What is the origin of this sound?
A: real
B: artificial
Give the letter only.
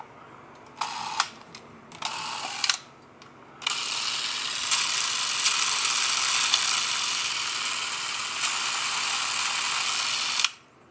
A